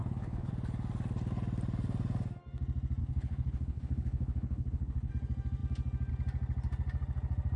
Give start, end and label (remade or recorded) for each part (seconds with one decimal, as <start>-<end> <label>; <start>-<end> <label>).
0.0-0.5 remade; 0.5-3.0 recorded; 3.0-5.1 remade; 5.1-7.6 recorded